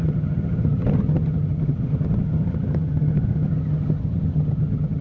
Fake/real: fake